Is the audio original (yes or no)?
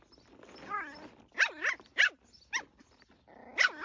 yes